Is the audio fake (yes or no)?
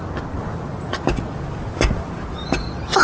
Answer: no